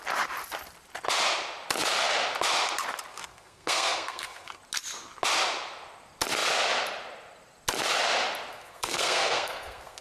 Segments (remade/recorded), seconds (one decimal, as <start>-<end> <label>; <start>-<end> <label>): 0.0-3.1 recorded; 3.1-4.6 remade; 4.6-8.5 recorded; 8.5-10.0 remade